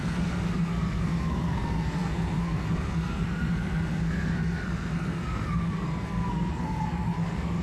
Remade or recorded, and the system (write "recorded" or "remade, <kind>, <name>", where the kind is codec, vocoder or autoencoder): remade, codec, SNAC